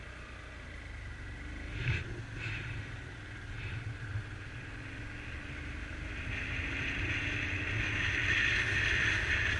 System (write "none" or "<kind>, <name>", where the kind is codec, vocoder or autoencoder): none